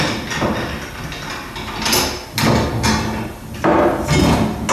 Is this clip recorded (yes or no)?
yes